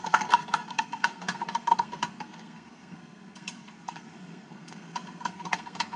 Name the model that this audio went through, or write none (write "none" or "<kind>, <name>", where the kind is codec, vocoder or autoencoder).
codec, SNAC